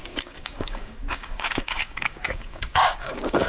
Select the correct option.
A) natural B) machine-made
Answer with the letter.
B